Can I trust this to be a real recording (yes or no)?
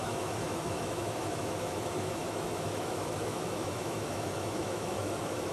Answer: no